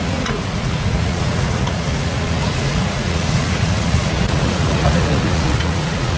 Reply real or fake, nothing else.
fake